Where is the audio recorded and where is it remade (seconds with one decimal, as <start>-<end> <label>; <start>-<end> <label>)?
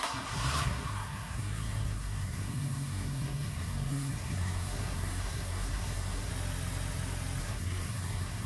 0.0-6.3 remade; 6.3-7.4 recorded; 7.4-8.5 remade